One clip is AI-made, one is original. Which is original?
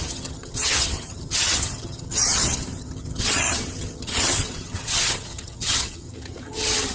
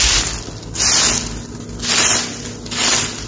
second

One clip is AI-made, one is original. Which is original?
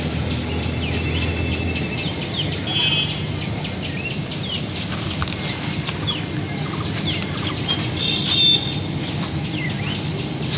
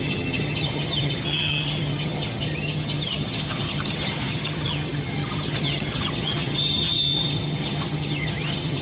first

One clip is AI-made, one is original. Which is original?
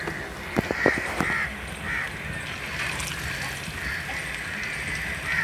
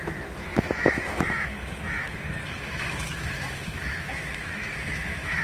first